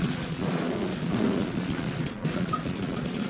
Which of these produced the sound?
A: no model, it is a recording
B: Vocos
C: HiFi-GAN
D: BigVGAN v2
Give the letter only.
B